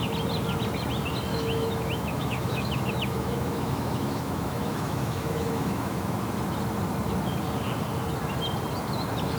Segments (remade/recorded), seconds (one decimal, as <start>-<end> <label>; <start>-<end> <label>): 0.0-1.3 recorded; 1.3-6.2 remade; 6.2-9.4 recorded